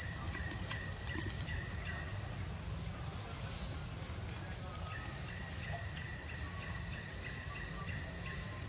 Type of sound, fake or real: fake